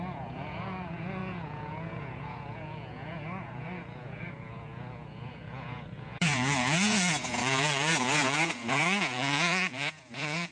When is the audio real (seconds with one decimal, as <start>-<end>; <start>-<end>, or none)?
none